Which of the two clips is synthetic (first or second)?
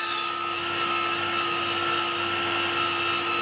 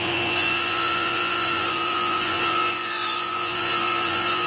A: second